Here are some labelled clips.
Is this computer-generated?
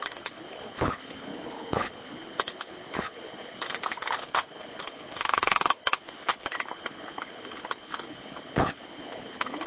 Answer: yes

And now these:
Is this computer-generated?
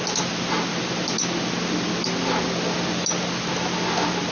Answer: no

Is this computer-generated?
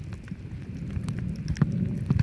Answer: no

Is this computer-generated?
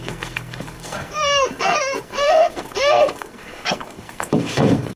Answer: yes